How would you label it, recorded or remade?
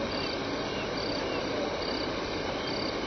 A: recorded